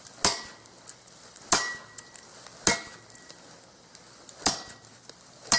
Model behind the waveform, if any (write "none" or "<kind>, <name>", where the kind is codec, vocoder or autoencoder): none